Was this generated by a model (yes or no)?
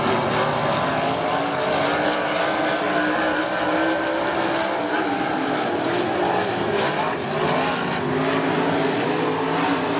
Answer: no